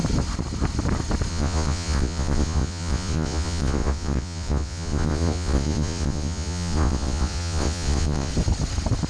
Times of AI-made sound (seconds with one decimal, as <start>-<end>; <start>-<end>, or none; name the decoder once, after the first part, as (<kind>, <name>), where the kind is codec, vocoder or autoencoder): 1.3-8.3 (vocoder, Vocos)